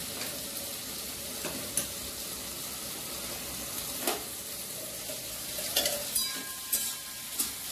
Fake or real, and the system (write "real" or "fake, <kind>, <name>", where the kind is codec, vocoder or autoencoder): real